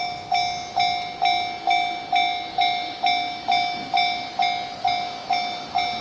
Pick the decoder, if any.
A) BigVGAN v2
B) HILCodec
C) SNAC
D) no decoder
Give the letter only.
D